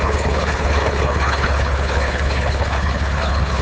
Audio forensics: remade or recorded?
remade